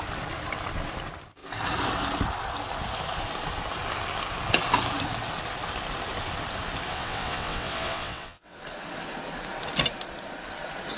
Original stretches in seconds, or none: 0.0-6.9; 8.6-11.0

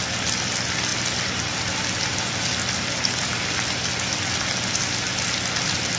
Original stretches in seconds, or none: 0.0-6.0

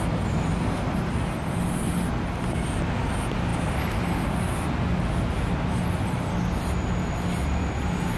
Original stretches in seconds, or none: 0.0-8.2

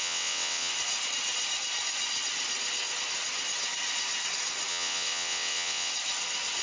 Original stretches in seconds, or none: 0.7-4.7; 5.9-6.6

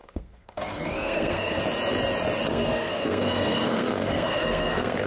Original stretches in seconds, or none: 1.6-2.5

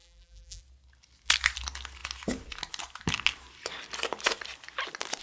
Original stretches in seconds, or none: 0.6-5.2

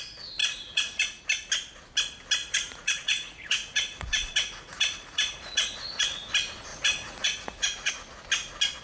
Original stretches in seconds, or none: 0.0-0.4; 1.2-2.4; 6.3-6.7; 7.9-8.8

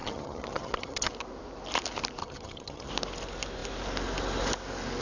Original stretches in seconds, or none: 1.1-2.2; 2.9-5.0